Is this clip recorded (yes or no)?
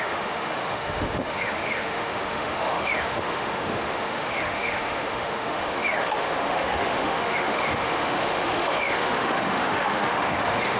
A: no